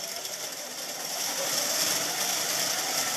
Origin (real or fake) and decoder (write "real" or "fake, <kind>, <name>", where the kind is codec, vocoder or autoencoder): real